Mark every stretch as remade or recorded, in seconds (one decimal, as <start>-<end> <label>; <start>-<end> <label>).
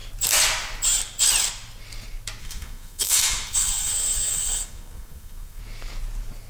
0.0-2.4 recorded; 2.4-5.6 remade; 5.6-6.5 recorded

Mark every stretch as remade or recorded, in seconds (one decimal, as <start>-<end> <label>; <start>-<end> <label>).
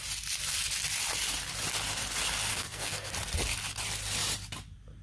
0.0-2.5 recorded; 2.5-3.1 remade; 3.1-5.0 recorded